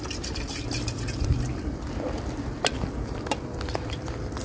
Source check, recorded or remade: recorded